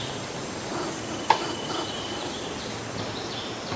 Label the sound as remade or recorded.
recorded